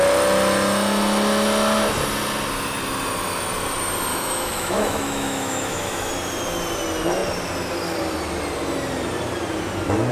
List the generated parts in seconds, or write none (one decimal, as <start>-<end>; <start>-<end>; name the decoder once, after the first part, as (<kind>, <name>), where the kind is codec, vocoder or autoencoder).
4.1-6.1 (autoencoder, DAC-VAE)